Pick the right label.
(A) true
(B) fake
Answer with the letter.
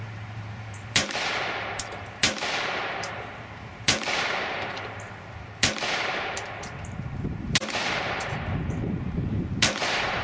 B